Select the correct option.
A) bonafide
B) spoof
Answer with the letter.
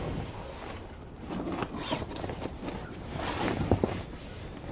A